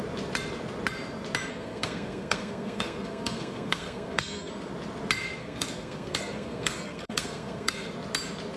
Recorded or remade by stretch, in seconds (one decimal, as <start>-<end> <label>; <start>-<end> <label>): 0.0-1.5 recorded; 1.5-4.5 remade; 4.5-5.4 recorded; 5.4-7.9 remade; 7.9-8.6 recorded